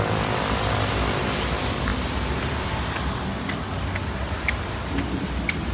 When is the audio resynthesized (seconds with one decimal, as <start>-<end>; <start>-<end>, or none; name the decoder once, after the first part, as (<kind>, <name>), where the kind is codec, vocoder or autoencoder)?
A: none